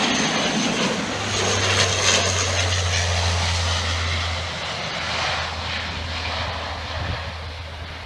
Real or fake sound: real